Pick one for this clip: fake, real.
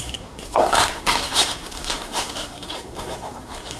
fake